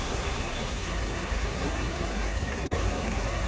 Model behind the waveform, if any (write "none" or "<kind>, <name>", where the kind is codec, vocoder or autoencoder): codec, SNAC